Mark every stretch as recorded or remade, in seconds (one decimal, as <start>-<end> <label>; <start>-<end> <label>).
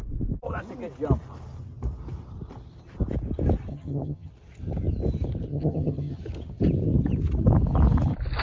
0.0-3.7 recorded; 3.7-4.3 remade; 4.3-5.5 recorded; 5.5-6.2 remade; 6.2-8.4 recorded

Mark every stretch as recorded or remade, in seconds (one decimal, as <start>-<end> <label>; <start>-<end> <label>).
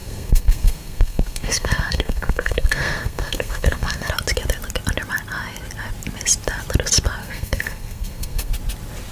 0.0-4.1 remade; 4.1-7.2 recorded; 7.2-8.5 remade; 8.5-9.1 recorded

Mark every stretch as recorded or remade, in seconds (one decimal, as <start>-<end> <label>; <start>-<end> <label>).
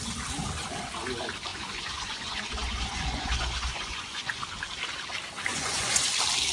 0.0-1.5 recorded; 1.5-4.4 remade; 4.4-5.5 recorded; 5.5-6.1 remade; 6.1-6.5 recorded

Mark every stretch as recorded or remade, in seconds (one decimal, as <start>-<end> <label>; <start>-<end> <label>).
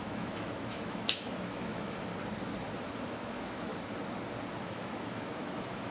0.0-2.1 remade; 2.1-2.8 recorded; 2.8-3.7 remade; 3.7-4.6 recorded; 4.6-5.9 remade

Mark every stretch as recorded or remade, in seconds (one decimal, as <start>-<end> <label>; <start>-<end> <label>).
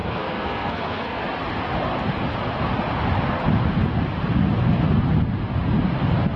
0.0-1.2 remade; 1.2-6.4 recorded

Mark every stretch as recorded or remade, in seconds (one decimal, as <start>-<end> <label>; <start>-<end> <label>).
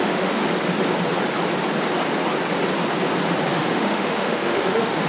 0.0-0.4 remade; 0.4-3.5 recorded; 3.5-5.1 remade